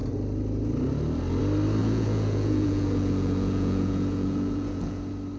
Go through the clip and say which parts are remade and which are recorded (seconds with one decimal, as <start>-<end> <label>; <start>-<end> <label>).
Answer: 0.0-1.8 recorded; 1.8-5.0 remade; 5.0-5.4 recorded